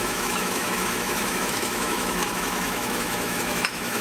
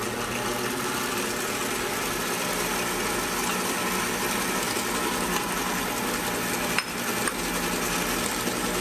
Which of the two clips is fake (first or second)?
first